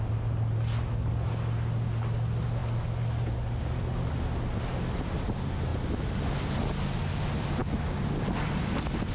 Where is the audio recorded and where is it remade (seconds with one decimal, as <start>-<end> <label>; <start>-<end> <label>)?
0.0-5.7 recorded; 5.7-6.3 remade; 6.3-9.1 recorded

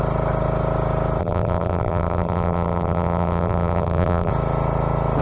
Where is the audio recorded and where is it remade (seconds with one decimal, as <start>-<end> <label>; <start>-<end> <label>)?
0.0-1.2 recorded; 1.2-4.3 remade; 4.3-5.2 recorded